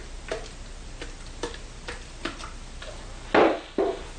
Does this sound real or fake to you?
real